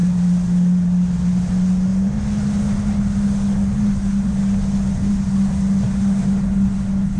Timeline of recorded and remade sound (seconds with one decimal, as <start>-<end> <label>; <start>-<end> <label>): 0.0-7.2 recorded